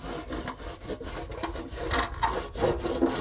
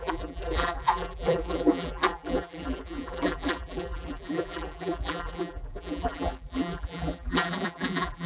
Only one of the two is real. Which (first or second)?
first